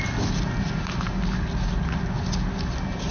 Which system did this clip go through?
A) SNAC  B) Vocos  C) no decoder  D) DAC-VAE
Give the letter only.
C